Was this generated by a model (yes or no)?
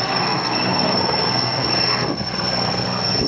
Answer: yes